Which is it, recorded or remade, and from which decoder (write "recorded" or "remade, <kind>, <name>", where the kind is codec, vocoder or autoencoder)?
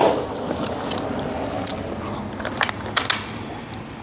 recorded